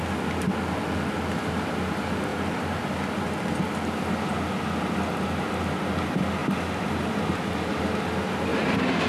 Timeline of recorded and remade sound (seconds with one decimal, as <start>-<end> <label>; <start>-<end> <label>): 0.0-2.3 recorded; 2.3-2.8 remade; 2.8-6.4 recorded; 6.4-7.8 remade; 7.8-8.5 recorded; 8.5-9.1 remade